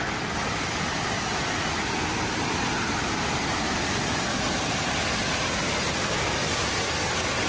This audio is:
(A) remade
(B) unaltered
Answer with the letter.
B